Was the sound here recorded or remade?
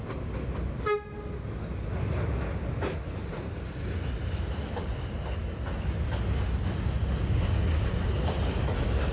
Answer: recorded